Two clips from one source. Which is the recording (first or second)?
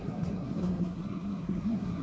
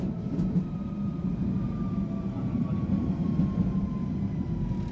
second